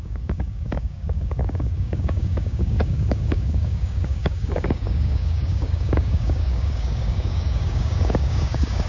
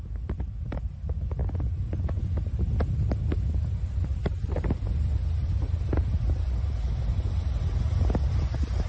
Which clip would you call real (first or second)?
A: second